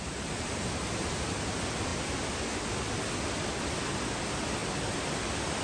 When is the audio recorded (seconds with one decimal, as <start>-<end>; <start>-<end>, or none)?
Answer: 0.0-5.6